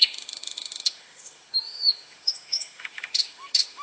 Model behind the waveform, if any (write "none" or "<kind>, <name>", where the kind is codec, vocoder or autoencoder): autoencoder, DAC-VAE